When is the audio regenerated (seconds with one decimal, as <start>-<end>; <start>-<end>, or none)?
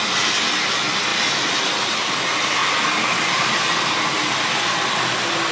2.6-3.8